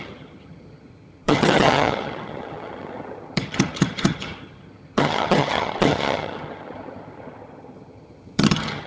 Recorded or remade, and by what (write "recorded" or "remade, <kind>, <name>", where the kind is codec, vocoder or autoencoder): remade, vocoder, HiFi-GAN